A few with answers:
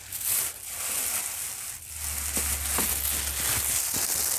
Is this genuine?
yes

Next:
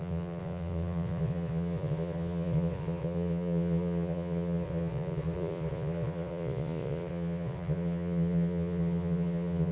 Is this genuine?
no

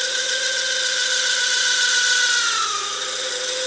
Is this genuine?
yes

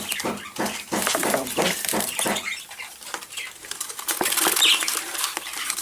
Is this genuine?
no